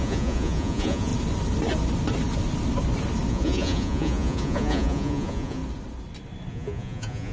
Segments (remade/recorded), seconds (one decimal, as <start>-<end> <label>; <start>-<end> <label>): 0.0-1.1 remade; 1.1-3.3 recorded; 3.3-5.6 remade; 5.6-6.5 recorded; 6.5-7.3 remade